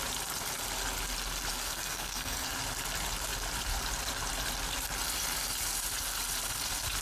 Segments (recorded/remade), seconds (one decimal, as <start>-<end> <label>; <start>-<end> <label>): 0.0-1.5 recorded; 1.5-2.5 remade; 2.5-7.0 recorded